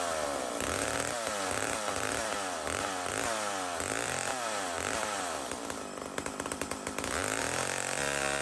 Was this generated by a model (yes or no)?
yes